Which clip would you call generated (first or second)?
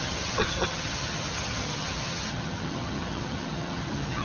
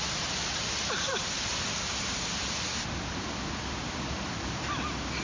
first